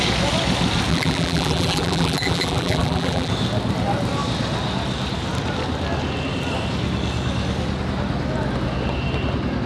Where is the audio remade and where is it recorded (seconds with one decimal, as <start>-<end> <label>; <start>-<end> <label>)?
0.0-0.9 recorded; 0.9-3.3 remade; 3.3-9.7 recorded